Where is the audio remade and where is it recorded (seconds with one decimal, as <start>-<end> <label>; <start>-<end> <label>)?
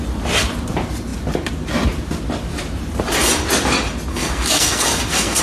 0.0-4.1 recorded; 4.1-5.4 remade